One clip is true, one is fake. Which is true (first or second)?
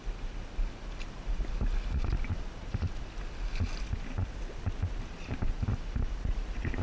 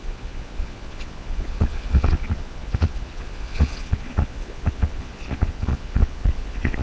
first